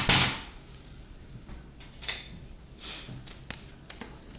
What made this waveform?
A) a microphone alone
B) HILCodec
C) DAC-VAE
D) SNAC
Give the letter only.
A